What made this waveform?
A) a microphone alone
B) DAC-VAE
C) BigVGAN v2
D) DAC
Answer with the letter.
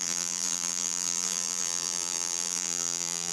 C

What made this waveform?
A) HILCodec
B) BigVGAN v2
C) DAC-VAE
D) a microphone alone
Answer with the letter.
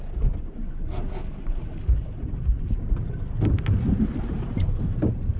D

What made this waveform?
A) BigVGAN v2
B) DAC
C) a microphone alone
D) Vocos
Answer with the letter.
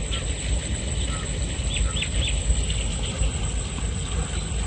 C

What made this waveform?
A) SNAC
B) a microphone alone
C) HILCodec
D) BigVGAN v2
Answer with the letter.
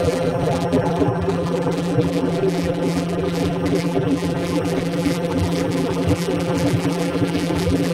D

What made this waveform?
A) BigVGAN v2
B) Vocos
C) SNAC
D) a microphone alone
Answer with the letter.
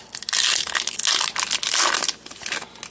D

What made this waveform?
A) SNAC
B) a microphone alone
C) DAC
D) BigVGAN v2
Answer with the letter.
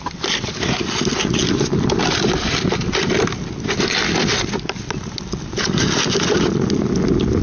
B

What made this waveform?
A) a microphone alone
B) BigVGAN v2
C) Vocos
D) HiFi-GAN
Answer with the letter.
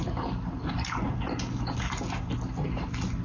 A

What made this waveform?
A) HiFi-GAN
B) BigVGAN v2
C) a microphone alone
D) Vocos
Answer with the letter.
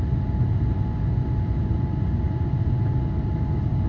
C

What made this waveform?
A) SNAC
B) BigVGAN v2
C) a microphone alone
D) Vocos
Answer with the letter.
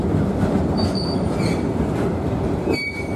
C